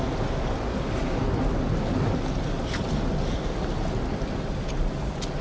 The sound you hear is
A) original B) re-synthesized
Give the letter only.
A